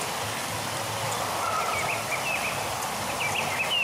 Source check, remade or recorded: recorded